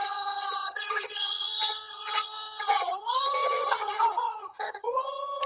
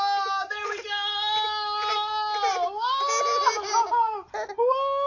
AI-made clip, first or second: first